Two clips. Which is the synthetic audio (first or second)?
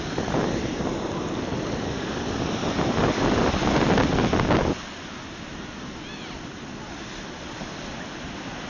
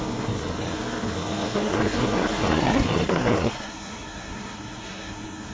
second